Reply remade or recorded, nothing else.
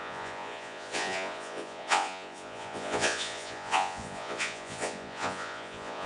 remade